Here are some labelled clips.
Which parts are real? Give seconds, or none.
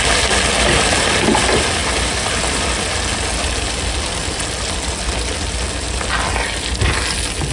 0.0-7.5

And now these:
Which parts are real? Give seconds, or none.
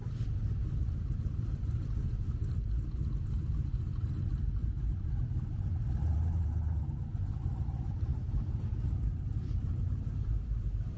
none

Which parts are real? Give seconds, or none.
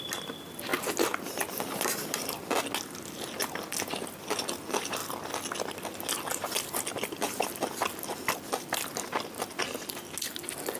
0.0-10.8